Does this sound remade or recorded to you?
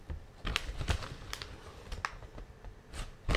recorded